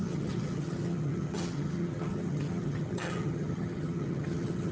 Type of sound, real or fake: fake